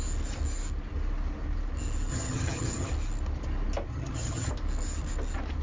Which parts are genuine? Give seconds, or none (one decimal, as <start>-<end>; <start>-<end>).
0.0-2.1; 2.9-3.9; 4.5-5.6